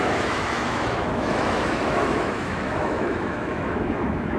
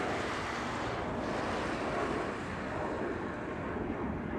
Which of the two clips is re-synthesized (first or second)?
first